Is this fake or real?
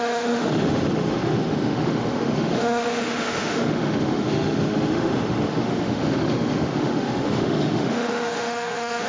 fake